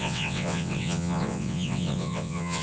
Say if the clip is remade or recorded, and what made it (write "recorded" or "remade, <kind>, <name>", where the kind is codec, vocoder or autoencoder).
remade, vocoder, WaveNeXt